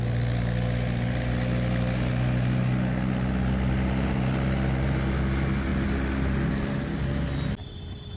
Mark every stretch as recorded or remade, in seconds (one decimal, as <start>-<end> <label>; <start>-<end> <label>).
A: 0.0-8.2 recorded